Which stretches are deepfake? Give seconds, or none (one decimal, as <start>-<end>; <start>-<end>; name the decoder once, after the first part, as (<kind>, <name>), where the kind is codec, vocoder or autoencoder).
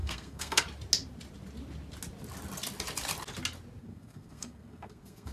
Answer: 0.0-0.6 (codec, SNAC); 3.8-5.3